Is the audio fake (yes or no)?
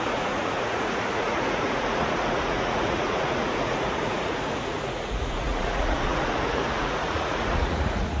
yes